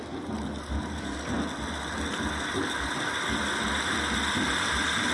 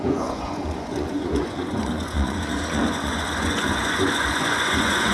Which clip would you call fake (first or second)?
second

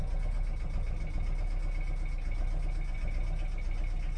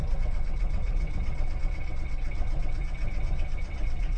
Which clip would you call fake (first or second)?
second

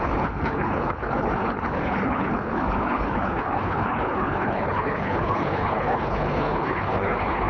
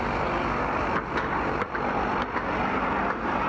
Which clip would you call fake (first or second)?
first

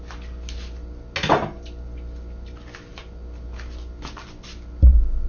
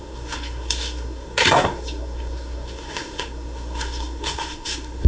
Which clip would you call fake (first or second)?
second